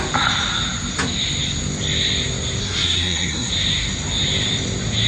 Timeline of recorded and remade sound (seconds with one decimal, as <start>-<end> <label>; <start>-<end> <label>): 0.0-2.6 recorded; 2.6-3.5 remade; 3.5-5.1 recorded